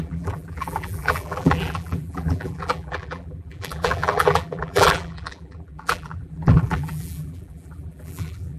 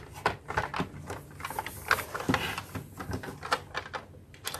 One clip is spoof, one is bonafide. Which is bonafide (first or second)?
second